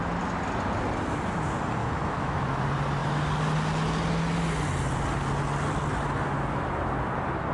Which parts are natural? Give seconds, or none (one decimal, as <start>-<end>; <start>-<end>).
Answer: 0.0-1.8; 2.6-7.5